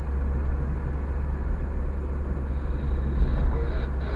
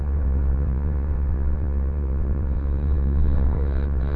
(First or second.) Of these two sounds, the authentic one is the first